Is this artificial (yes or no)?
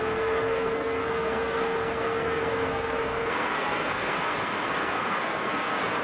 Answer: yes